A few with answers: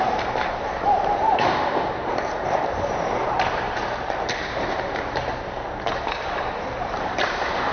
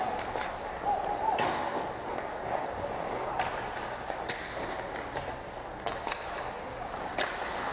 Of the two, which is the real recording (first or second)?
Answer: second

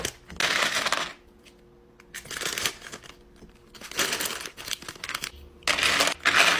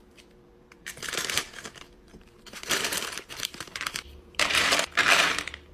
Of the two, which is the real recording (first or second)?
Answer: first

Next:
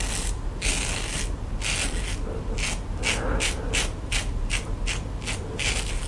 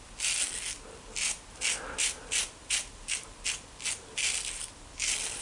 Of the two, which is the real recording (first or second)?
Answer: first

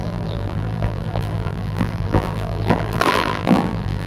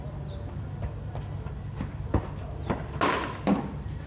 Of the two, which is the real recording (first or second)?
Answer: second